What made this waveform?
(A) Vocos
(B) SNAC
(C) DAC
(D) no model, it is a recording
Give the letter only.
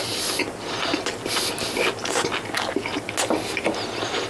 D